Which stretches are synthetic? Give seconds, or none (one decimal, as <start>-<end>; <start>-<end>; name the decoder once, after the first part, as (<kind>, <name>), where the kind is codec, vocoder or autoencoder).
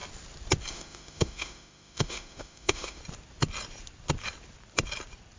0.7-3.0 (autoencoder, DAC-VAE)